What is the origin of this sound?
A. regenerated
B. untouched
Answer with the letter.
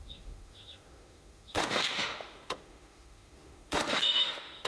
A